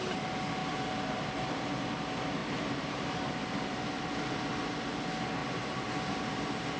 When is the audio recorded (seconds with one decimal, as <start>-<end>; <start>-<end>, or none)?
0.0-0.6; 1.7-2.4; 3.2-5.4; 5.9-6.8

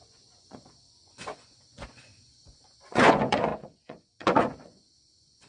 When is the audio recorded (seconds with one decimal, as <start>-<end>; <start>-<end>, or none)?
none

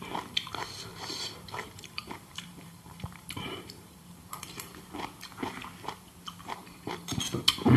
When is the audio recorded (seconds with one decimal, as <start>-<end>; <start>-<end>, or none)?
0.0-0.9; 4.7-6.6; 7.2-7.8

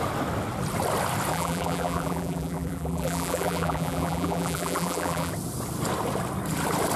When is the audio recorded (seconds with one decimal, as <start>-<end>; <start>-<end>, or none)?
0.0-1.3; 5.3-7.0

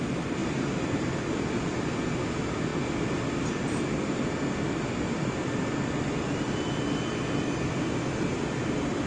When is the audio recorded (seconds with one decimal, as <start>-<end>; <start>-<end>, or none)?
0.0-9.1

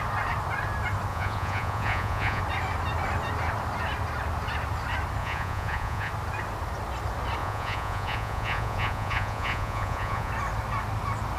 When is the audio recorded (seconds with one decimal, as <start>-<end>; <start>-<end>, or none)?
0.0-1.1; 2.4-5.2; 6.1-7.4; 10.3-11.4

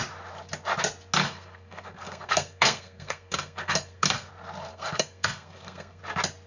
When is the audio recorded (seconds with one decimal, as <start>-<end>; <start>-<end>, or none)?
0.0-1.2; 4.3-4.7; 6.0-6.5

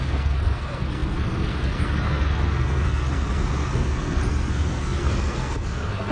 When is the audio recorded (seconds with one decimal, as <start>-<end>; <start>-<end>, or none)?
none